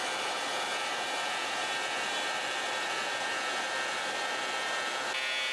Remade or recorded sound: recorded